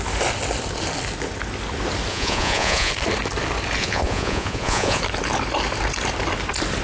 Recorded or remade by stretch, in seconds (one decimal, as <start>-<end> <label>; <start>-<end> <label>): 0.0-2.1 recorded; 2.1-2.9 remade; 2.9-3.8 recorded; 3.8-5.0 remade; 5.0-6.8 recorded